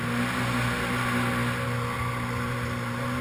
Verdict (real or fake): real